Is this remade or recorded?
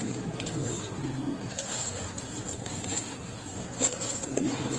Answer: remade